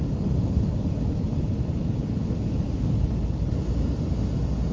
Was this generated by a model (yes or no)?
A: no